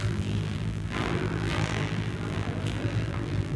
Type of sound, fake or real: fake